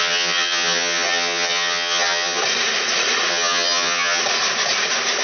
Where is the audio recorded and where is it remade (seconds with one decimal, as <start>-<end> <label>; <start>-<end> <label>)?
0.0-2.4 remade; 2.4-3.3 recorded; 3.3-4.2 remade; 4.2-5.2 recorded